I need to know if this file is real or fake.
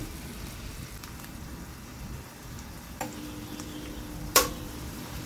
fake